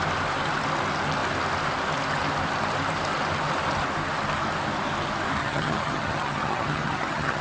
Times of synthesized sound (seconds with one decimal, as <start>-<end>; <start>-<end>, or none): 5.4-7.4